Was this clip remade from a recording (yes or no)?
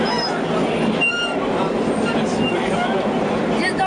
no